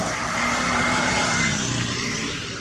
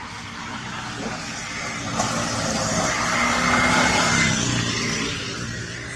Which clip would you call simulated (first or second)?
first